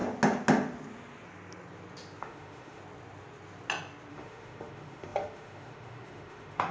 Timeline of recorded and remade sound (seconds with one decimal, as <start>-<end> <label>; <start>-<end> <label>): 0.0-2.2 recorded; 2.2-2.8 remade; 2.8-4.1 recorded; 4.1-6.7 remade